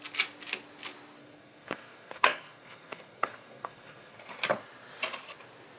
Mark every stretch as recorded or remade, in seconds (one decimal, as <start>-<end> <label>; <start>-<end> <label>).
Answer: 0.0-1.2 recorded; 1.2-4.3 remade; 4.3-5.8 recorded